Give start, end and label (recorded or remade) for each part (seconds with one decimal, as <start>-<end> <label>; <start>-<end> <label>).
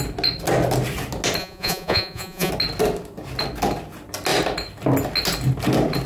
0.0-1.4 recorded; 1.4-2.5 remade; 2.5-6.1 recorded